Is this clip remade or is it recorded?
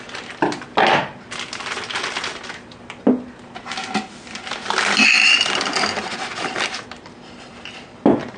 recorded